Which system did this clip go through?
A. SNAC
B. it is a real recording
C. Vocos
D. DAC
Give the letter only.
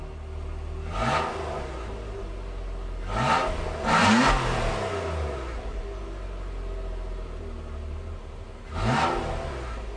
B